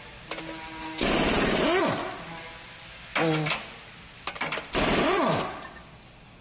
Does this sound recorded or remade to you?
recorded